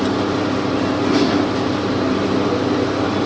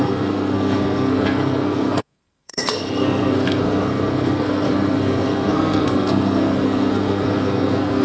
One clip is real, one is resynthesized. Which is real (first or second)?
first